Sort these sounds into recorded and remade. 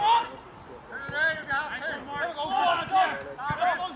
recorded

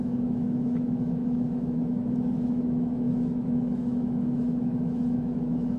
remade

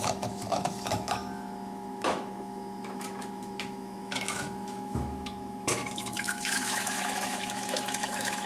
remade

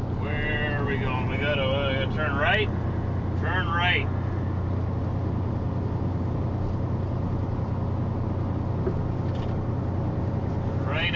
recorded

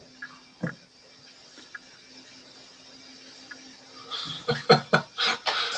recorded